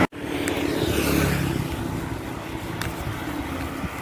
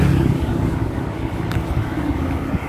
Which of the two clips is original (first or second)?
first